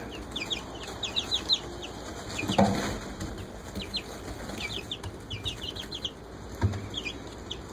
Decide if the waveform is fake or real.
real